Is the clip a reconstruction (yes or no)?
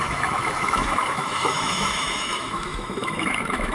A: yes